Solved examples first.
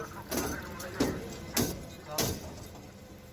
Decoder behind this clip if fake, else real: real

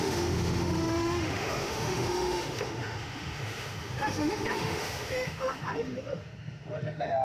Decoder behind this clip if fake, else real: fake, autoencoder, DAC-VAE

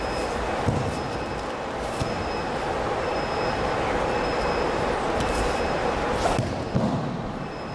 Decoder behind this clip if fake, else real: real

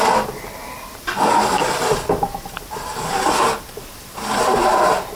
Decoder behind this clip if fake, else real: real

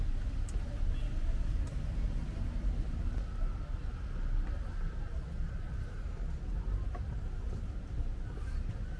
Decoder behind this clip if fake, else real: real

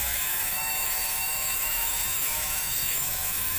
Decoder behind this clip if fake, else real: fake, autoencoder, DAC-VAE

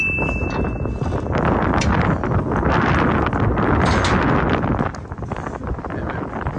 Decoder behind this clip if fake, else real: real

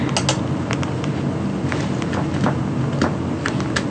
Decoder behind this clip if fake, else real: real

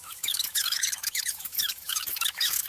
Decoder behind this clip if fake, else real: fake, autoencoder, DAC-VAE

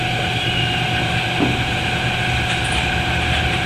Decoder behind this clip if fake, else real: real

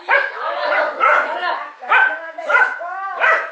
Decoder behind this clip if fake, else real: fake, autoencoder, DAC-VAE